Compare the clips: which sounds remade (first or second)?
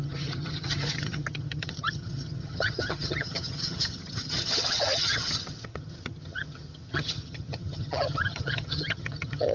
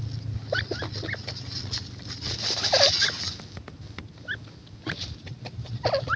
first